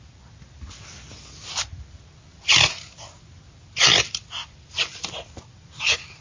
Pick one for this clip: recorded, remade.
recorded